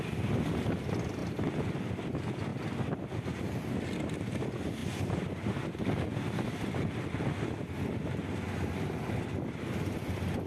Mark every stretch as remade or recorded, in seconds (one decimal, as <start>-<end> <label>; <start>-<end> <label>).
0.0-8.2 recorded; 8.2-9.1 remade; 9.1-10.5 recorded

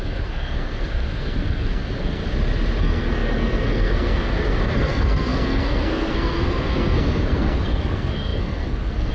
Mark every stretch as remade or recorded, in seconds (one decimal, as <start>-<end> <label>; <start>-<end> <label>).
0.0-2.2 remade; 2.2-2.8 recorded; 2.8-9.1 remade